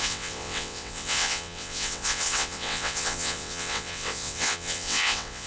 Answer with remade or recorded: remade